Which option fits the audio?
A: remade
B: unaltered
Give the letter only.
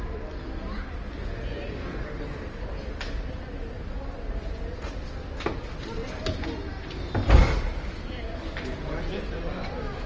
B